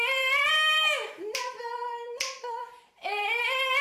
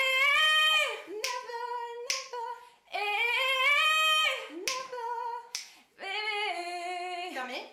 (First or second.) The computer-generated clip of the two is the first